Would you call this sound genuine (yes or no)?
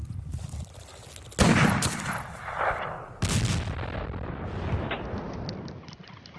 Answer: yes